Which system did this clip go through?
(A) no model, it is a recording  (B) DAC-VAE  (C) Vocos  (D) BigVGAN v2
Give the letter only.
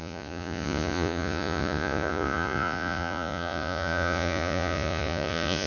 C